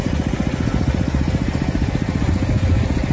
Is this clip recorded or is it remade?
recorded